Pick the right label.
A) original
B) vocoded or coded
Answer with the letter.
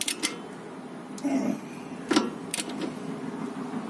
A